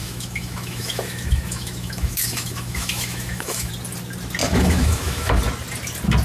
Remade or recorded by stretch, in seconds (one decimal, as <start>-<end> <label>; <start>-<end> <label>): 0.0-3.7 remade; 3.7-4.4 recorded; 4.4-5.4 remade; 5.4-6.2 recorded